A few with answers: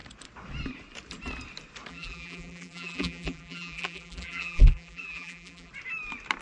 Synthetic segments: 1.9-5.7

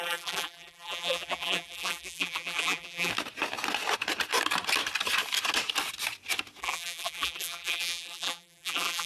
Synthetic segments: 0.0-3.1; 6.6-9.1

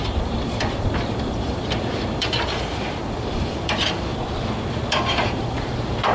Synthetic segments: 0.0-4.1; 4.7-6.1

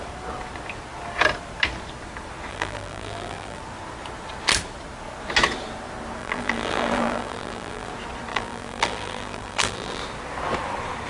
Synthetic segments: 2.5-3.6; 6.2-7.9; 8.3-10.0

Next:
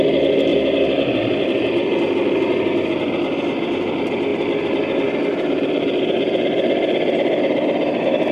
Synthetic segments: 0.5-3.0; 4.3-6.0